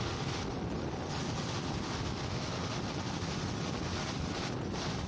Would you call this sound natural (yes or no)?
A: yes